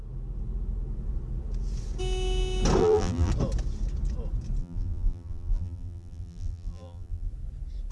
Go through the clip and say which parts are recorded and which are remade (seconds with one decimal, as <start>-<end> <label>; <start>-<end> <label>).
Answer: 0.0-2.8 recorded; 2.8-3.3 remade; 3.3-4.6 recorded; 4.6-7.3 remade; 7.3-7.9 recorded